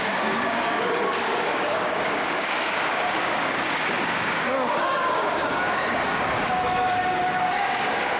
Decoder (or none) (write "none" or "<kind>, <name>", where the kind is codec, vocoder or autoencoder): codec, DAC